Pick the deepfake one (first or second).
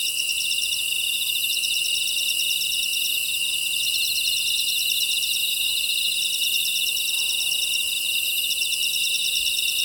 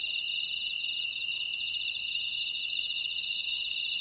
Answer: second